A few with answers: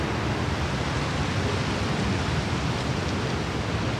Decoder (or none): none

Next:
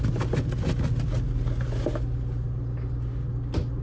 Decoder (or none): none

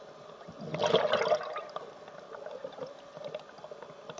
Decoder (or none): none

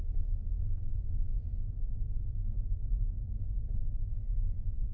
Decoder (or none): none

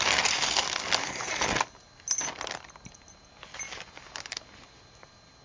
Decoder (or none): none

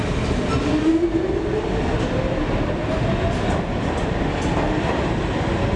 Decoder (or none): none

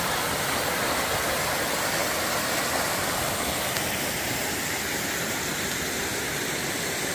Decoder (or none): none